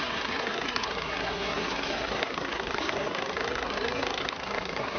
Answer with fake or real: fake